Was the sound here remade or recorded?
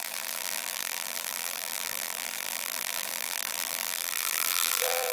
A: remade